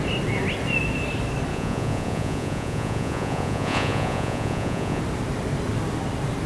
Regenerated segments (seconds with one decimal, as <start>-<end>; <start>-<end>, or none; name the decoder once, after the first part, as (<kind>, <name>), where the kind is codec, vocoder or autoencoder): 1.5-5.0 (vocoder, Vocos)